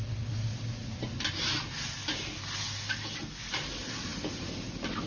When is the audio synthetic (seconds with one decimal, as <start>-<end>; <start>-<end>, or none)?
none